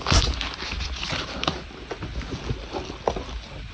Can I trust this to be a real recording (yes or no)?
yes